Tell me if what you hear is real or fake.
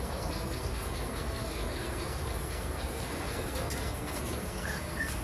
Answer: fake